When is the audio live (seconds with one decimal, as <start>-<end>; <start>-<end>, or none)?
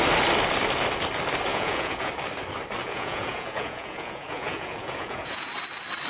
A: 0.0-1.5; 2.1-2.8; 5.5-6.1